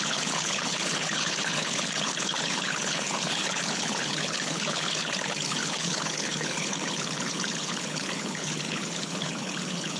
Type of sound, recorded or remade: remade